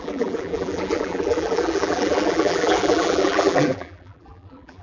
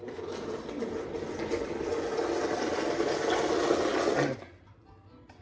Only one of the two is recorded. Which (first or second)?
second